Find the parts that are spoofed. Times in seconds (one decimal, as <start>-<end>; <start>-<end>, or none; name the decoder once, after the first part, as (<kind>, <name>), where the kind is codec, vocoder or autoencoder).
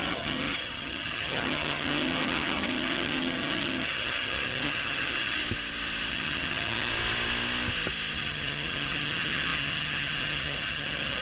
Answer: 0.0-5.4 (vocoder, HiFi-GAN); 6.1-6.9; 8.1-11.2